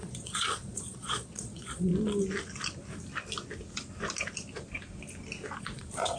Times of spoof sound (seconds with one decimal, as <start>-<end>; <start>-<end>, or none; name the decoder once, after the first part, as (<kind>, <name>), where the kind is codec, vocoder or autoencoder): 0.0-1.9 (vocoder, Vocos); 5.6-6.2